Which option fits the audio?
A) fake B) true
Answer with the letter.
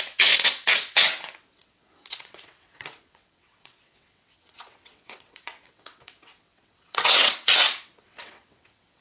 A